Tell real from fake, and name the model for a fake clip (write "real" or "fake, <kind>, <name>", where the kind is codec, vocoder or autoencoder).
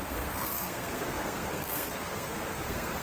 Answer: fake, codec, SNAC